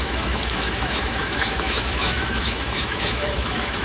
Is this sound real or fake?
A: fake